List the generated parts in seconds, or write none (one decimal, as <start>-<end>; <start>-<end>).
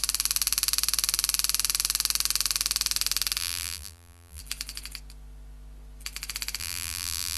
3.4-4.4; 6.6-7.4